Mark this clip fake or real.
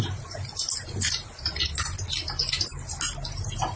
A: real